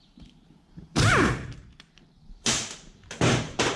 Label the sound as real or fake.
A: fake